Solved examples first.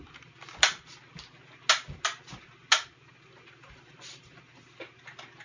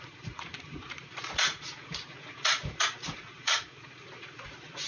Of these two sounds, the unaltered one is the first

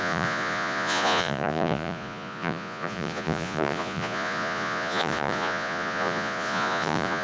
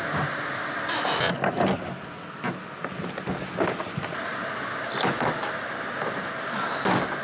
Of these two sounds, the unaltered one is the second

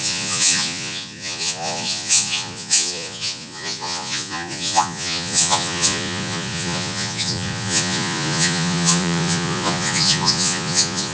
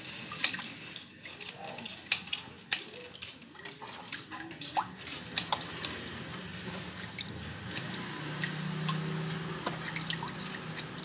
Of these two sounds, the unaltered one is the second